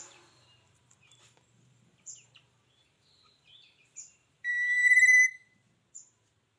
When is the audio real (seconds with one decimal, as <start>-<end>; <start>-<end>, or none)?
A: 4.5-6.6